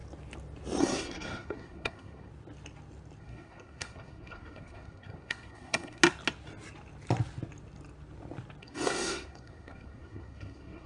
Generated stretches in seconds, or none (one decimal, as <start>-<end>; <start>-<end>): 0.8-2.3; 3.2-6.0; 8.6-10.9